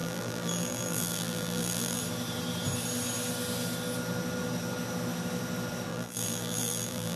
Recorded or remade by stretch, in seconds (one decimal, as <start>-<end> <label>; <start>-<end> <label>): 0.0-2.0 remade; 2.0-5.9 recorded; 5.9-7.2 remade

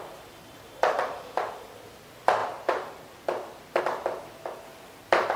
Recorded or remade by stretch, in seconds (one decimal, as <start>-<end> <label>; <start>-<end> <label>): 0.0-2.4 recorded; 2.4-3.8 remade; 3.8-4.7 recorded; 4.7-5.4 remade

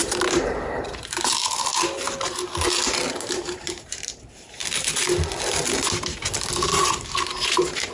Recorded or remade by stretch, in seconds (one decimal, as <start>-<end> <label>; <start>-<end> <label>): 0.0-1.7 remade; 1.7-3.2 recorded; 3.2-4.6 remade; 4.6-6.7 recorded; 6.7-7.9 remade

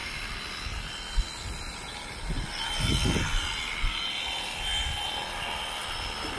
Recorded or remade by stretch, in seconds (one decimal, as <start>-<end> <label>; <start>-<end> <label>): 0.0-6.4 recorded

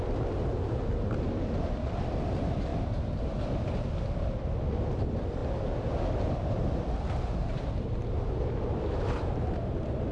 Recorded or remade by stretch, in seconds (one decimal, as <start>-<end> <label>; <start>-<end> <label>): 0.0-2.7 recorded; 2.7-3.3 remade; 3.3-7.4 recorded; 7.4-7.9 remade; 7.9-10.1 recorded

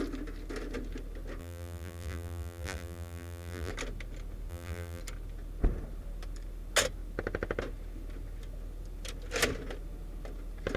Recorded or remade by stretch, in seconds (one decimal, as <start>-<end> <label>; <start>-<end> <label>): 0.0-1.4 recorded; 1.4-3.7 remade; 3.7-4.5 recorded; 4.5-5.0 remade; 5.0-10.8 recorded

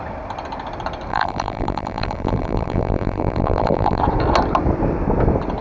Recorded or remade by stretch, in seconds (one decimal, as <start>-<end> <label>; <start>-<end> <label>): 0.0-1.1 recorded; 1.1-4.0 remade; 4.0-5.6 recorded

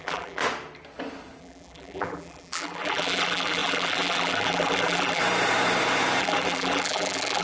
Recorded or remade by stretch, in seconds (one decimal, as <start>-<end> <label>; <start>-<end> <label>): 0.0-0.4 remade; 0.4-1.4 recorded; 1.4-5.2 remade; 5.2-6.2 recorded; 6.2-7.4 remade